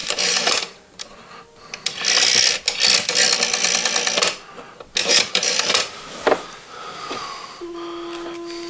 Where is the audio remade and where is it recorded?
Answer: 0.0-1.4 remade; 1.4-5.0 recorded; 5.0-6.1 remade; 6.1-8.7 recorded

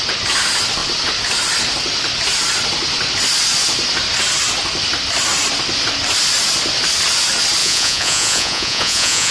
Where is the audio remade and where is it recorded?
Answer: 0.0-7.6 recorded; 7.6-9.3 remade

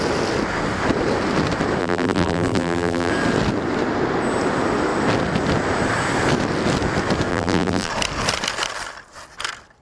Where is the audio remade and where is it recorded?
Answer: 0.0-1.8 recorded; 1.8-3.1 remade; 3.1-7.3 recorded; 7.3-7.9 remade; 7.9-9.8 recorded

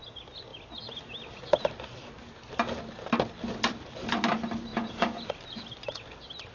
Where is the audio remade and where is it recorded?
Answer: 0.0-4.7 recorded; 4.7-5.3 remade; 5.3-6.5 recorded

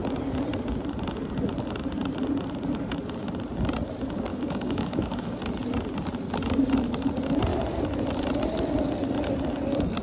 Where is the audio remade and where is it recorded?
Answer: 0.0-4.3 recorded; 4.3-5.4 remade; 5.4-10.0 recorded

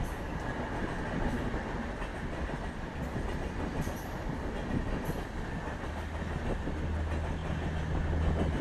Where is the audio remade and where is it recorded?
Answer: 0.0-3.7 recorded; 3.7-5.9 remade; 5.9-8.6 recorded

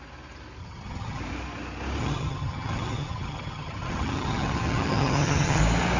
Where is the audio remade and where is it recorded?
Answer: 0.0-0.6 recorded; 0.6-1.2 remade; 1.2-2.0 recorded; 2.0-5.6 remade; 5.6-6.0 recorded